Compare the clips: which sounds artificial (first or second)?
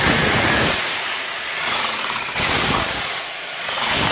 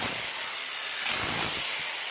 first